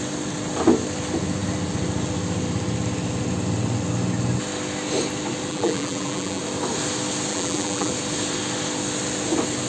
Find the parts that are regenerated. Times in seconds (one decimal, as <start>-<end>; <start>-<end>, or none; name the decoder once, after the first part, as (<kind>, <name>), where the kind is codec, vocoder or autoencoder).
5.5-6.4 (vocoder, BigVGAN v2); 7.3-7.9